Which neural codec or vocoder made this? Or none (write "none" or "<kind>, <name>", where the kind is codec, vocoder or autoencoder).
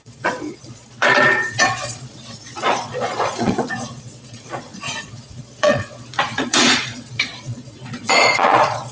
vocoder, Vocos